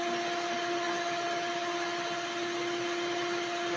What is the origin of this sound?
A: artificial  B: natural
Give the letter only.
B